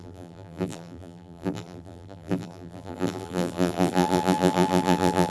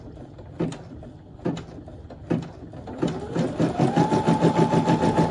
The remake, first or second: first